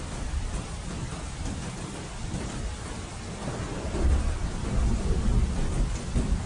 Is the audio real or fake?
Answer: real